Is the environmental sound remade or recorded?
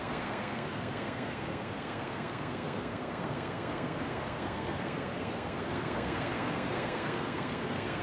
remade